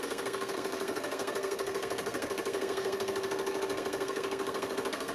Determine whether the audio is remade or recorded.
remade